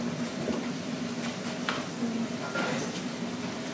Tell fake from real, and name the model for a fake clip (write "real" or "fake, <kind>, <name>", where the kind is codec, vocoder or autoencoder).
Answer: real